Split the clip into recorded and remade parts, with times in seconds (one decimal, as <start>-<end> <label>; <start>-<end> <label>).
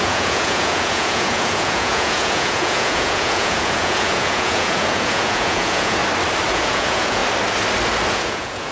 0.0-6.0 remade; 6.0-6.5 recorded; 6.5-7.2 remade; 7.2-8.1 recorded; 8.1-8.7 remade